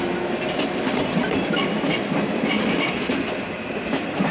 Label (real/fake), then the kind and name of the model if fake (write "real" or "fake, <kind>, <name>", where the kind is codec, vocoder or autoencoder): real